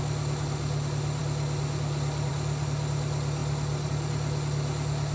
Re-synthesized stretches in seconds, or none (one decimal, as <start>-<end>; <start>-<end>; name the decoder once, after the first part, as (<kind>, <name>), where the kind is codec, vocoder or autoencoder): none

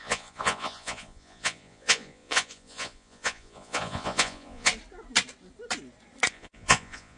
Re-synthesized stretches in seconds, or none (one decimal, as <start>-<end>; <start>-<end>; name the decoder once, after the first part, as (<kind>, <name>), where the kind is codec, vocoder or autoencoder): 0.0-4.7 (vocoder, Vocos); 6.3-7.2

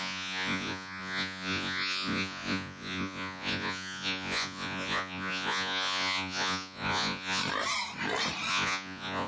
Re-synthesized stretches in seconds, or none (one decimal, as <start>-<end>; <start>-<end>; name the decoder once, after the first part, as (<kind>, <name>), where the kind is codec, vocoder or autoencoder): 0.0-7.4 (vocoder, Vocos); 8.5-9.3

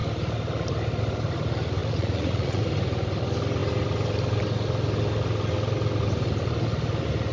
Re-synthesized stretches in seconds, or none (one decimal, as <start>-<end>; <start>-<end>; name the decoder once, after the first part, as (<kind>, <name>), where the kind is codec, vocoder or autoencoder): 1.8-2.6 (vocoder, Vocos)